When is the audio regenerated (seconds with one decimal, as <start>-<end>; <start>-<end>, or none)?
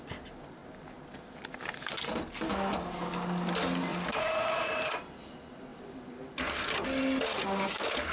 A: 0.6-1.3; 3.9-5.3; 5.7-6.2